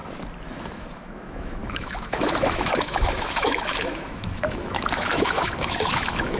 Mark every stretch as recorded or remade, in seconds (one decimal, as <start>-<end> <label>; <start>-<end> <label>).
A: 0.0-0.5 recorded; 0.5-6.4 remade